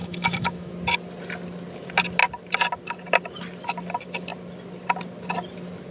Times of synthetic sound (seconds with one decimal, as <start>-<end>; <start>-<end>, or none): 0.0-0.7